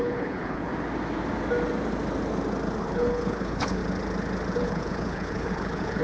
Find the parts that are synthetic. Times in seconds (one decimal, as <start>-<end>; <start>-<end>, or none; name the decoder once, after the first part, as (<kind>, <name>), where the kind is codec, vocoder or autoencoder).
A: 0.0-0.7 (codec, HILCodec); 2.8-3.8; 4.6-6.0